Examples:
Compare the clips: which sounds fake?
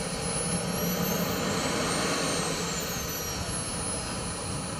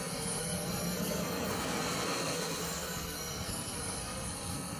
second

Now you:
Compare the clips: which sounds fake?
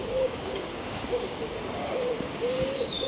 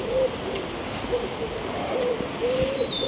first